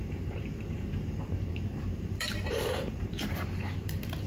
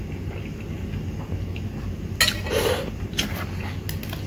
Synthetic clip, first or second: first